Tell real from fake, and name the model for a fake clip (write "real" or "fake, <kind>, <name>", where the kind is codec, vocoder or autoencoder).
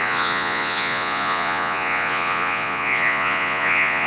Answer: fake, vocoder, Vocos